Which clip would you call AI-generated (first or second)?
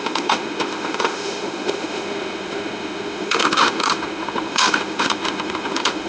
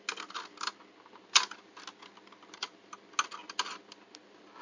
first